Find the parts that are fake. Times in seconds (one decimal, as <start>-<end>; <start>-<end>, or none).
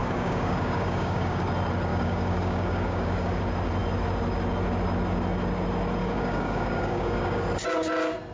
0.0-1.4; 1.9-3.4; 6.0-7.4